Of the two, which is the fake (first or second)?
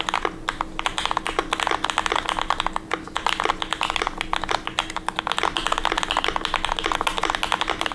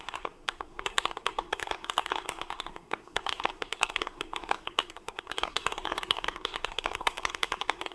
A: second